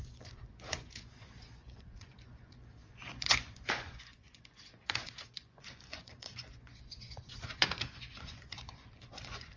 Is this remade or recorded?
remade